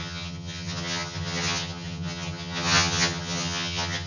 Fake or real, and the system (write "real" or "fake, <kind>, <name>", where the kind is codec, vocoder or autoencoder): fake, vocoder, HiFi-GAN